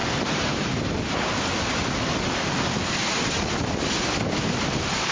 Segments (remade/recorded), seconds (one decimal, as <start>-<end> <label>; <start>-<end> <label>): 0.0-5.1 recorded